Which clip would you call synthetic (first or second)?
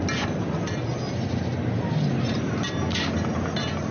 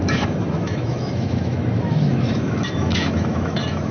second